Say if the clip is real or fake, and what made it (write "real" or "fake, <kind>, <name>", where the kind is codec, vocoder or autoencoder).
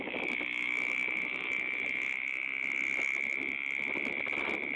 real